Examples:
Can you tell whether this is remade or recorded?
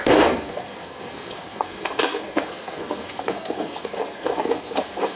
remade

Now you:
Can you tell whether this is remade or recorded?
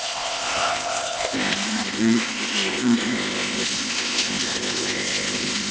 remade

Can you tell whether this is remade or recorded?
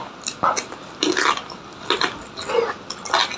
recorded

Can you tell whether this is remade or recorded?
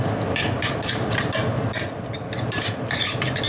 recorded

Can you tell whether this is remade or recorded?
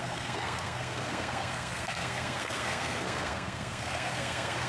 remade